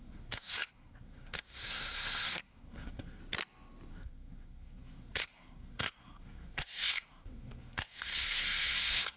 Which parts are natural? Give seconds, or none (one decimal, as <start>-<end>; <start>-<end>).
3.2-3.9